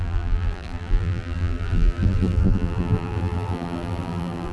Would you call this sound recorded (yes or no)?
no